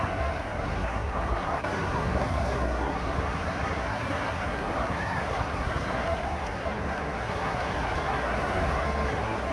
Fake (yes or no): yes